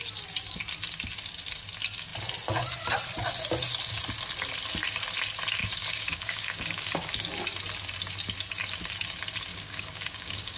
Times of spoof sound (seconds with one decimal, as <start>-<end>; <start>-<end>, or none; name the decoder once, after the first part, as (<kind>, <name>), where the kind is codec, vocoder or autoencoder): 5.6-7.1 (codec, DAC); 9.5-10.6